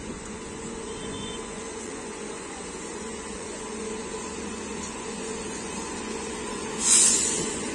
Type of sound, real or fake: fake